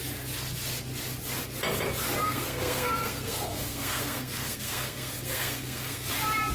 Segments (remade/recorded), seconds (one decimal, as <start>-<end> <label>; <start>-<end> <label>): 0.0-2.2 recorded; 2.2-6.1 remade; 6.1-6.5 recorded